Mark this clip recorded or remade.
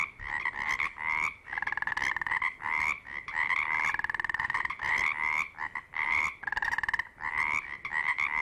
recorded